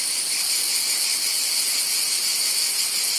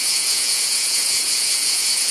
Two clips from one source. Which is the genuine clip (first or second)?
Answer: first